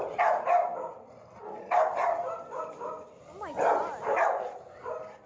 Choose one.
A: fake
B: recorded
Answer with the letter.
B